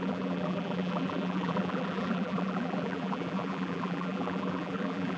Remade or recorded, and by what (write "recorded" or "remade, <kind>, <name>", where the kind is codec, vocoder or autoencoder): remade, vocoder, BigVGAN v2